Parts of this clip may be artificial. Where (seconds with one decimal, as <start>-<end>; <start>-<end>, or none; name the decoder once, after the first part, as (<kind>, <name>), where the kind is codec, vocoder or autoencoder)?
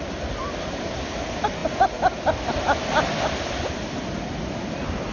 none